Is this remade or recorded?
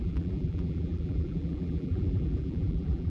remade